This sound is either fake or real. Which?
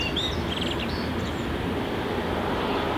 real